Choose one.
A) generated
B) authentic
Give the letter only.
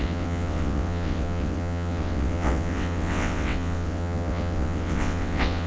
A